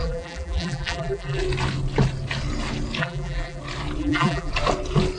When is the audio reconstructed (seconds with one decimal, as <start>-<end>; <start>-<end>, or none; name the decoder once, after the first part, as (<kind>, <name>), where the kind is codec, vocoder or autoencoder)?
0.0-1.4 (vocoder, BigVGAN v2); 3.0-3.6; 4.0-4.5